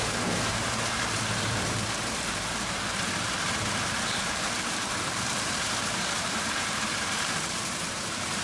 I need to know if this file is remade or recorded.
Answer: remade